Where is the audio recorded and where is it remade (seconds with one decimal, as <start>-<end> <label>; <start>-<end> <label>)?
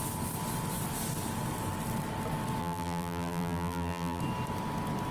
0.0-2.6 recorded; 2.6-4.2 remade; 4.2-5.1 recorded